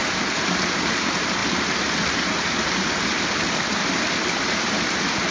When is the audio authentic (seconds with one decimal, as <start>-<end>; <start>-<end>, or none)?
0.0-5.3